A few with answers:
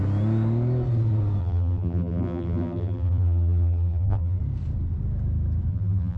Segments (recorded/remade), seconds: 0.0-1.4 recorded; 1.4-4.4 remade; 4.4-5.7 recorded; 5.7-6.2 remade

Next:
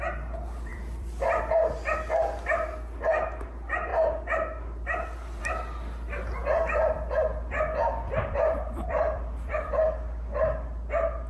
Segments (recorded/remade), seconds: 0.0-0.7 recorded; 0.7-1.4 remade; 1.4-6.4 recorded; 6.4-9.7 remade; 9.7-11.3 recorded